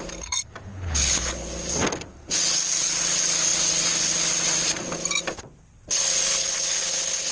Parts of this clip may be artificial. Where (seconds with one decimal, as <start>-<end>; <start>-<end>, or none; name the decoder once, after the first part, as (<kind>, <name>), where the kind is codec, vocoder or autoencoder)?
0.7-1.5 (codec, HILCodec)